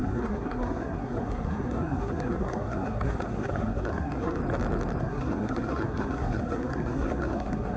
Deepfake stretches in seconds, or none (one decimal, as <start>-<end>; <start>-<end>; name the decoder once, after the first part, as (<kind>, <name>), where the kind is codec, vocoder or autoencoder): 0.0-4.4 (codec, SNAC); 5.0-7.8